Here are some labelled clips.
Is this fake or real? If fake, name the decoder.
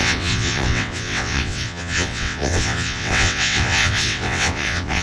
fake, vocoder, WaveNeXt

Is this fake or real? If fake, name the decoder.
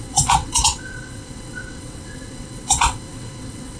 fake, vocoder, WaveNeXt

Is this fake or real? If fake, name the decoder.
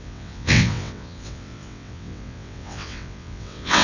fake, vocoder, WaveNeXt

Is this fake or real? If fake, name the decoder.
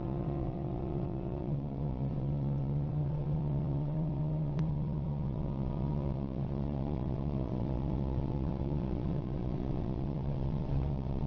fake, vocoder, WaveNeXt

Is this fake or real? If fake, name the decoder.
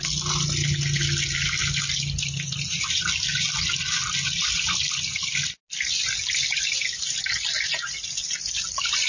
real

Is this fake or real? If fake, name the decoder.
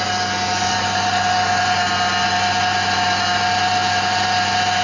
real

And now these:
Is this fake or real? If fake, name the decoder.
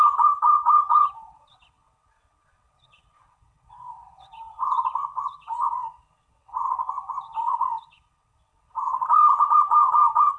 fake, vocoder, WaveNeXt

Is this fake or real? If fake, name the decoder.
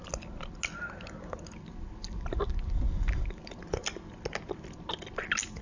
real